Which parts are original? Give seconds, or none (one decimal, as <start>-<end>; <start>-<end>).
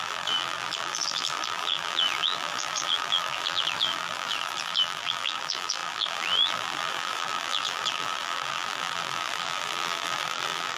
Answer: none